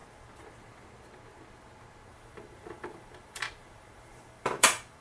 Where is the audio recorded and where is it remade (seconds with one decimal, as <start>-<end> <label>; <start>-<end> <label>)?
0.0-2.1 recorded; 2.1-5.0 remade